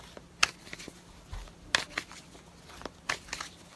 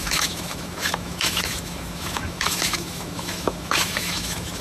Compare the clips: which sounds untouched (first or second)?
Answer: first